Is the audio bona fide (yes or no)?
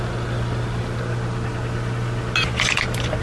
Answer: yes